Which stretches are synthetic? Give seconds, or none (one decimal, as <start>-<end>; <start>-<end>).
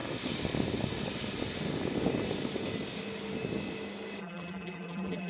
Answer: 4.2-5.3